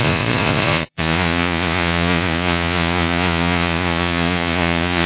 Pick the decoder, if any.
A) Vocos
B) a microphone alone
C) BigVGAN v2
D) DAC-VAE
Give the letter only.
A